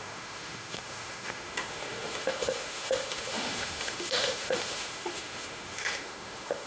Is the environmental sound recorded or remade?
remade